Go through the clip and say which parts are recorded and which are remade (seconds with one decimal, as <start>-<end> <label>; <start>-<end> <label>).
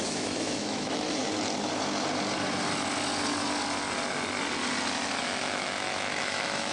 0.0-1.2 remade; 1.2-5.2 recorded; 5.2-6.7 remade